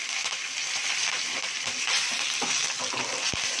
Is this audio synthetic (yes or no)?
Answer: no